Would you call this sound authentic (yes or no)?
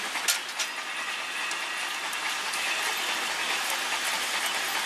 yes